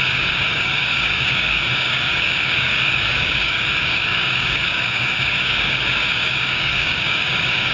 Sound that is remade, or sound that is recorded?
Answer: remade